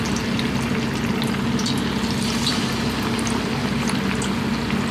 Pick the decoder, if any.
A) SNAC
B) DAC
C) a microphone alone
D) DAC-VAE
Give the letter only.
C